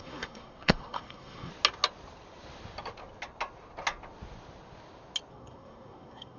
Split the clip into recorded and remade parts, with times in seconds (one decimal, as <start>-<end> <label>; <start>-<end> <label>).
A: 0.0-1.5 remade; 1.5-5.3 recorded; 5.3-6.4 remade